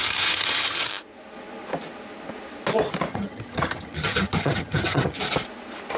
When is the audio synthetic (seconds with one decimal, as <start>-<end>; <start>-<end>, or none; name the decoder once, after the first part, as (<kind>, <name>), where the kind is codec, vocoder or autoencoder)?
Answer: 0.0-0.9 (vocoder, HiFi-GAN); 3.1-5.2